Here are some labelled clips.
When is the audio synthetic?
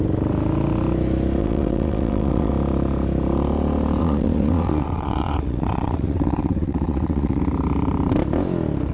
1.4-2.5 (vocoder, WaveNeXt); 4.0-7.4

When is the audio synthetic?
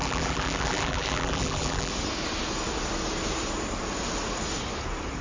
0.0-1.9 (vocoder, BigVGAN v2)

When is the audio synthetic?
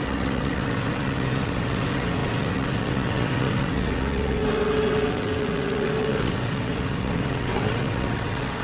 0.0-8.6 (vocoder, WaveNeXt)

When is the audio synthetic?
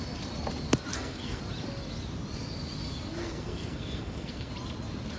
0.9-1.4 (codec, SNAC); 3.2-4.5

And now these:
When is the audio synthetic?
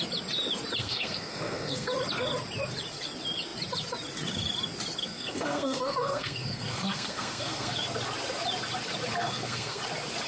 0.8-1.9 (codec, SNAC); 5.0-7.7; 9.2-9.8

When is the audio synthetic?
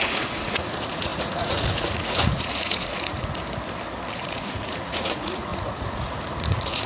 0.0-3.4 (vocoder, Vocos); 4.2-6.9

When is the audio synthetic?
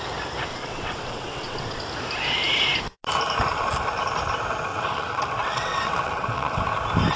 0.5-1.8 (vocoder, WaveNeXt); 4.7-6.6